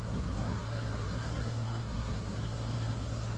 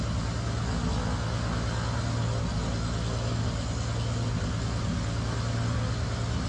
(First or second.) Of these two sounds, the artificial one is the first